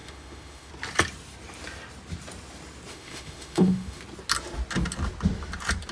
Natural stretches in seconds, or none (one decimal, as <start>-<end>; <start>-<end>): 0.7-2.9; 4.0-5.9